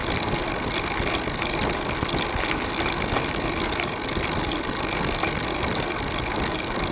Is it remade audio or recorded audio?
recorded